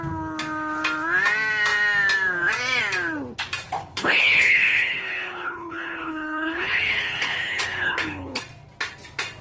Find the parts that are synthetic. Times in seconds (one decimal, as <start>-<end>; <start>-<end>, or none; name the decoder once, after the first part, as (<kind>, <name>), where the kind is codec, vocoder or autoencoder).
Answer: 3.8-8.4 (codec, HILCodec)